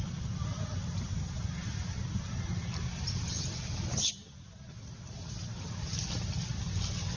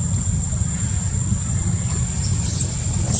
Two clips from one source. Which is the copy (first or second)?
second